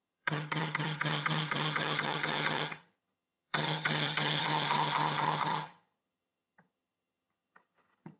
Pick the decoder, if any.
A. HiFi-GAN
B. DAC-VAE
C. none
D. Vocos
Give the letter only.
A